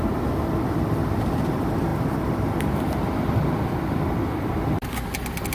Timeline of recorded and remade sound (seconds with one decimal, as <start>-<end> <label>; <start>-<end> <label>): 0.0-5.5 recorded